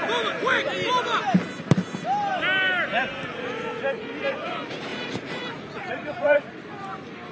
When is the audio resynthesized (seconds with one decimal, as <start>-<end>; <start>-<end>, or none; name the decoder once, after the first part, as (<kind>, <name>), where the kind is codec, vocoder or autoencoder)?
4.9-6.7 (vocoder, Vocos)